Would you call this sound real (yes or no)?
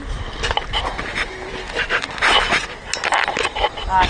yes